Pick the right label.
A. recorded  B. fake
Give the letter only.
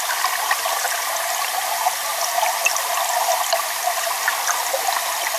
A